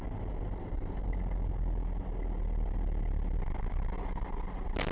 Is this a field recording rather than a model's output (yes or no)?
yes